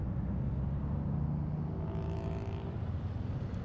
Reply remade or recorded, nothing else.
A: recorded